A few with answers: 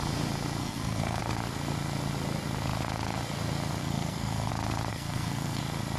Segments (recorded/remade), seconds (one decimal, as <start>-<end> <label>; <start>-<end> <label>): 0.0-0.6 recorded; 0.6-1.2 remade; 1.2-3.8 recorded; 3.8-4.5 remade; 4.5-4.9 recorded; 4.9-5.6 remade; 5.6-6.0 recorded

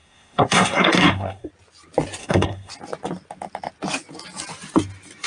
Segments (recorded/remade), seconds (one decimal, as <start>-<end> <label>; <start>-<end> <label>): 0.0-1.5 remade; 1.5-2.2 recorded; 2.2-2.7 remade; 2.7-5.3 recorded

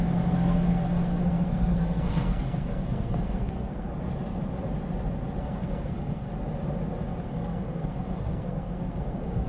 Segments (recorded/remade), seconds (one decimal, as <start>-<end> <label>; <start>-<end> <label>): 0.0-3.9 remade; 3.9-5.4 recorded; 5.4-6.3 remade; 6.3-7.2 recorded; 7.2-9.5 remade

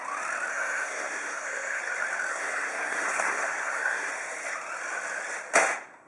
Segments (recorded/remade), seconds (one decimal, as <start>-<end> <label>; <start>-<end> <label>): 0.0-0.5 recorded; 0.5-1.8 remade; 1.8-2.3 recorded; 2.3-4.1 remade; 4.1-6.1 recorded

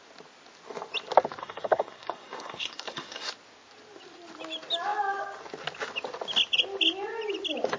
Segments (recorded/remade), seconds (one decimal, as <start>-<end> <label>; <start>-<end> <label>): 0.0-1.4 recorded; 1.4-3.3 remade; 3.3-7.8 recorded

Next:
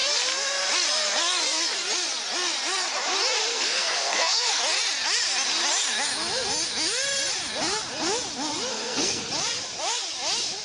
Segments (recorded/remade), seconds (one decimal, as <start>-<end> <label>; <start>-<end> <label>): 0.0-3.5 recorded; 3.5-4.6 remade; 4.6-8.7 recorded; 8.7-9.3 remade; 9.3-10.6 recorded